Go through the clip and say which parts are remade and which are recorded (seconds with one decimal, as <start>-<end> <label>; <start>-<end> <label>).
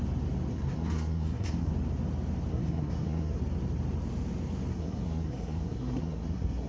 0.0-0.5 recorded; 0.5-1.7 remade; 1.7-2.5 recorded; 2.5-3.4 remade; 3.4-4.7 recorded; 4.7-6.7 remade